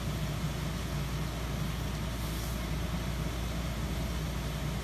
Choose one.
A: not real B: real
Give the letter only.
B